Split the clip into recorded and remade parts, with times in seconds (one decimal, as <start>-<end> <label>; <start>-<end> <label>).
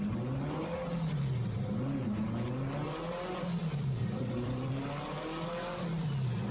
0.0-3.6 recorded; 3.6-4.7 remade; 4.7-6.5 recorded